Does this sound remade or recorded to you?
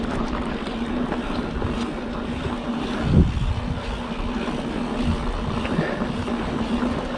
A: recorded